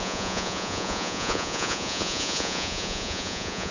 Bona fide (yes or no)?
no